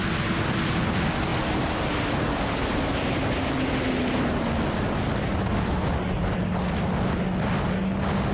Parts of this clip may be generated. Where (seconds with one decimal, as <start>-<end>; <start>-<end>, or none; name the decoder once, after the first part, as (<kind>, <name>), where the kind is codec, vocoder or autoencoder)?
none